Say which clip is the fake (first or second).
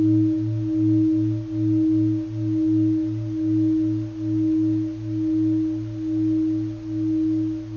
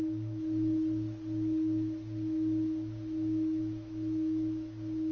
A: second